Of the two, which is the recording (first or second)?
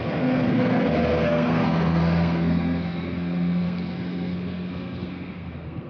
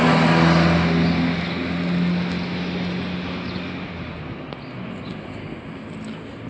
second